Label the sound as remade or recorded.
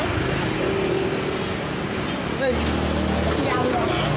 recorded